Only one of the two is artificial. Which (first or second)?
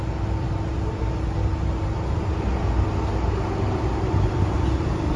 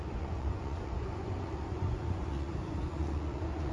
second